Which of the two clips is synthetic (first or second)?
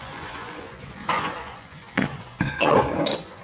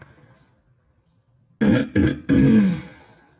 first